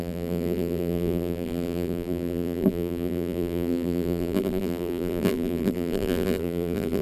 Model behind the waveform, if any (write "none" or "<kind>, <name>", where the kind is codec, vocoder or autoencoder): vocoder, BigVGAN v2